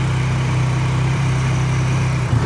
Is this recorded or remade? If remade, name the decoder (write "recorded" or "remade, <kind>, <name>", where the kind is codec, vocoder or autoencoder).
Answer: remade, vocoder, BigVGAN v2